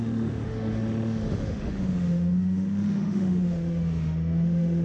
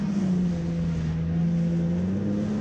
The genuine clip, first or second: second